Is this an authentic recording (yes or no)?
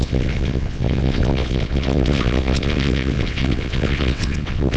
no